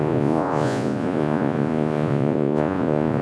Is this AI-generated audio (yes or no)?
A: yes